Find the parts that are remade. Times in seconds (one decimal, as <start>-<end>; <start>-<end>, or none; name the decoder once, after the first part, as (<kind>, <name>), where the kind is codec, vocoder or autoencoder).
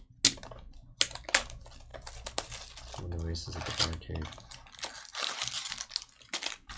none